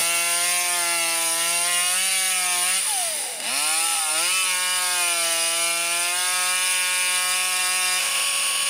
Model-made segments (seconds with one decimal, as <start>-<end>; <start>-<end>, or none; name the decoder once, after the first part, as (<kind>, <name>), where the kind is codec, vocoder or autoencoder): 2.8-3.5 (autoencoder, DAC-VAE); 8.0-8.7